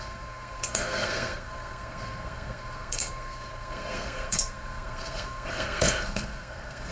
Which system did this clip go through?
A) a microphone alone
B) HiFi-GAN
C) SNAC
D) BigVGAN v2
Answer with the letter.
C